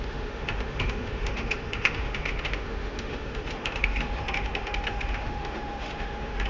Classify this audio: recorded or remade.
remade